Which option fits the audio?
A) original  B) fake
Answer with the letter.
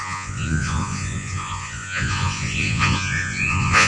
B